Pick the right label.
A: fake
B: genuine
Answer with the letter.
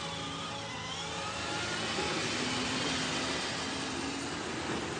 B